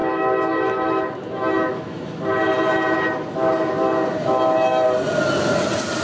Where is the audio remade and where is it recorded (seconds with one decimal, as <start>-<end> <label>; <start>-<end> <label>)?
0.0-2.2 remade; 2.2-6.0 recorded